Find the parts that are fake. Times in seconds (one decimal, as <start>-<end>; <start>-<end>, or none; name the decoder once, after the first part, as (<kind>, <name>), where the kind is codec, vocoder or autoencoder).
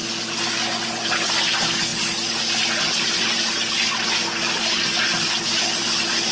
none